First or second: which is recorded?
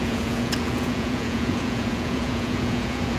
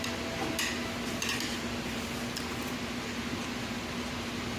second